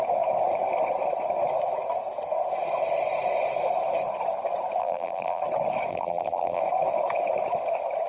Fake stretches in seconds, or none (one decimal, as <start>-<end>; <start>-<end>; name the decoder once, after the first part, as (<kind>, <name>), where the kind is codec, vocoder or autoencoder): 4.8-5.4 (vocoder, BigVGAN v2); 5.9-6.6